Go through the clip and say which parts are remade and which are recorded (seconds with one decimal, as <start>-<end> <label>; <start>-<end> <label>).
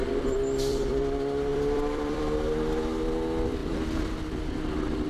0.0-1.0 remade; 1.0-1.5 recorded; 1.5-2.2 remade; 2.2-3.6 recorded; 3.6-4.1 remade; 4.1-5.1 recorded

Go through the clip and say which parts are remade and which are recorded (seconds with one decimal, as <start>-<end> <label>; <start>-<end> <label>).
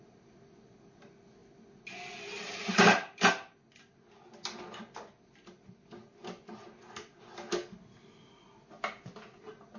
0.0-9.8 recorded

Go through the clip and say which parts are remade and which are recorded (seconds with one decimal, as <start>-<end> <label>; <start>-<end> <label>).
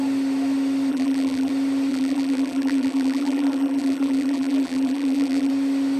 0.0-0.9 recorded; 0.9-1.5 remade; 1.5-1.9 recorded; 1.9-5.5 remade; 5.5-6.0 recorded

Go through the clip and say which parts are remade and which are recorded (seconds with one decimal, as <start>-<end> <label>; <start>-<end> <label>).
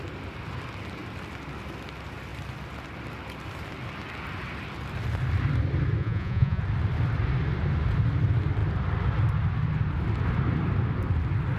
0.0-6.0 recorded; 6.0-6.6 remade; 6.6-11.6 recorded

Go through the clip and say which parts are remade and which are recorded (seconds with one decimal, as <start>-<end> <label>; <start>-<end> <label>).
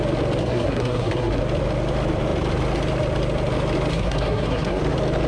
0.0-0.4 recorded; 0.4-1.4 remade; 1.4-3.9 recorded; 3.9-4.8 remade; 4.8-5.3 recorded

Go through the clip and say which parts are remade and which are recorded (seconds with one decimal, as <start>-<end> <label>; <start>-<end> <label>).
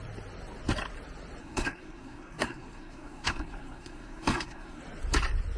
0.0-1.4 recorded; 1.4-4.8 remade; 4.8-5.6 recorded